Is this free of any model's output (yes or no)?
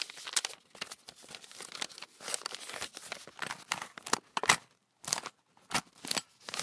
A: yes